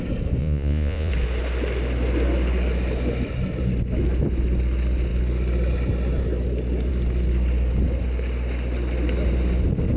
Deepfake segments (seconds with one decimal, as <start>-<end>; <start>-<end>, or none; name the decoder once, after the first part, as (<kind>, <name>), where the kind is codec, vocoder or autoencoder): 0.4-1.1 (vocoder, Vocos)